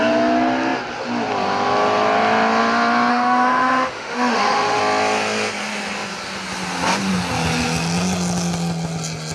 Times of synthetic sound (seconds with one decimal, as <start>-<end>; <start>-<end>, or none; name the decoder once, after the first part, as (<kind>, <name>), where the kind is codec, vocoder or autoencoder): 3.1-4.8 (autoencoder, DAC-VAE)